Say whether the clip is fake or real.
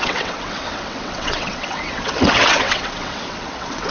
fake